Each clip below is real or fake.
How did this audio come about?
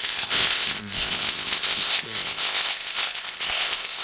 fake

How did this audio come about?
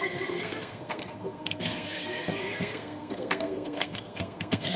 fake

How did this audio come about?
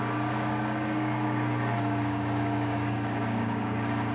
fake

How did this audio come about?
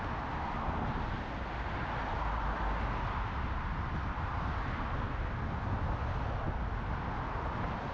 real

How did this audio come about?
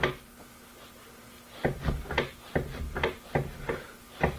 real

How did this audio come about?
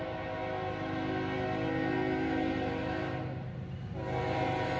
real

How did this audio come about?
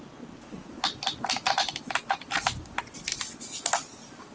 real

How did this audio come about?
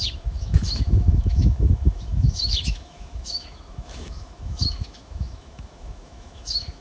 fake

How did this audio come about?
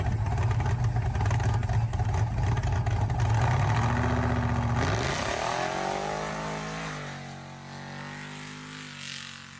real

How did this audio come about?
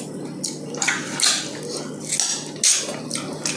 real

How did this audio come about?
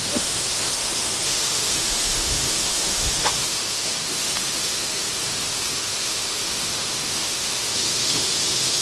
fake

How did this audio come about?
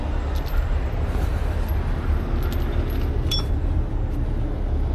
real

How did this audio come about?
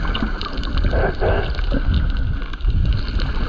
real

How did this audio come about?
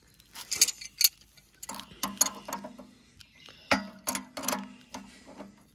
real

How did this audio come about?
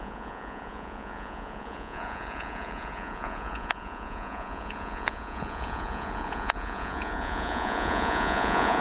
fake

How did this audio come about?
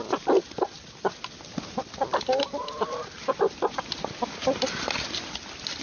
real